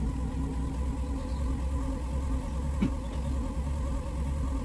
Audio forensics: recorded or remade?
recorded